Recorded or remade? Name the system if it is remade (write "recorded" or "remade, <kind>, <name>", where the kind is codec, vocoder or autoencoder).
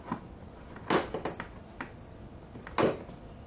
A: recorded